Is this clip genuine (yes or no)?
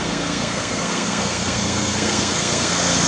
no